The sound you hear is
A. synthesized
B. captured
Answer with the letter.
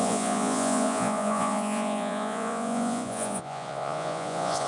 A